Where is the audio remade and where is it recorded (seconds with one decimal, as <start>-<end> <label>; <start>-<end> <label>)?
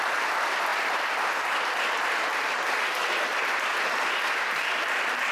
0.0-5.3 remade